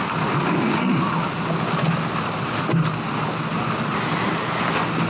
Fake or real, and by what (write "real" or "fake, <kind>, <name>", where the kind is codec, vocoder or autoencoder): real